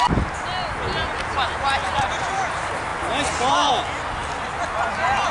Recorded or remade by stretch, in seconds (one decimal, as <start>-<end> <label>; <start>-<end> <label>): 0.0-1.8 recorded; 1.8-2.3 remade; 2.3-5.3 recorded